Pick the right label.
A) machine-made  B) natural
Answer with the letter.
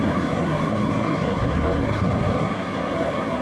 A